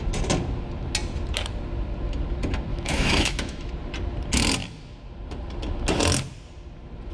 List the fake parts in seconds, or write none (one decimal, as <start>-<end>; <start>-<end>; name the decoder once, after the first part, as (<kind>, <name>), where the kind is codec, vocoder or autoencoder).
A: 2.7-3.7 (autoencoder, DAC-VAE)